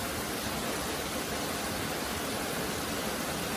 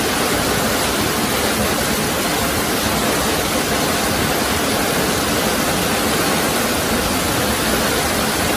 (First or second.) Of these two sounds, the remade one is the first